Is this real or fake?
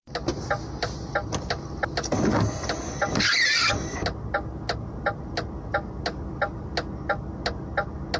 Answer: real